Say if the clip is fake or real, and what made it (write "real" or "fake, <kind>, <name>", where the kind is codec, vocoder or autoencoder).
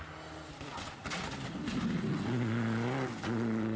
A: real